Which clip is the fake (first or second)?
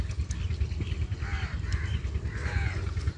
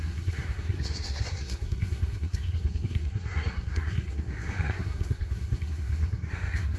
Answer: second